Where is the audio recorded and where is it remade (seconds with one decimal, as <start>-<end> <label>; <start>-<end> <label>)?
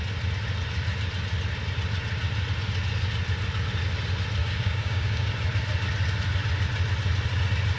0.0-4.4 recorded; 4.4-5.3 remade; 5.3-7.8 recorded